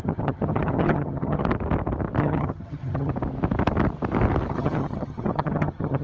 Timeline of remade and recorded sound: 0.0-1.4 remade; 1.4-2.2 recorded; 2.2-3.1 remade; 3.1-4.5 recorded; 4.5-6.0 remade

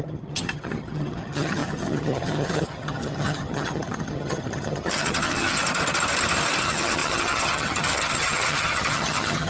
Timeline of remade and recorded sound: 0.0-5.6 remade; 5.6-6.6 recorded; 6.6-9.5 remade

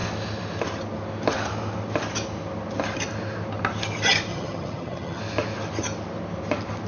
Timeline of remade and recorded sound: 0.0-4.3 recorded; 4.3-5.2 remade; 5.2-6.9 recorded

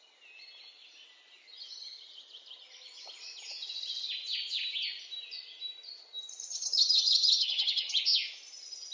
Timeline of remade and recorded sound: 0.0-6.5 recorded; 6.5-8.0 remade; 8.0-8.9 recorded

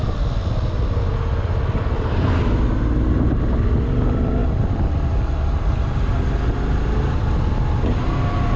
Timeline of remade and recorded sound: 0.0-8.6 recorded